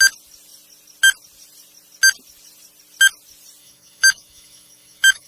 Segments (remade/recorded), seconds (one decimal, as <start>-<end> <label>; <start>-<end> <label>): 0.0-3.6 recorded; 3.6-5.3 remade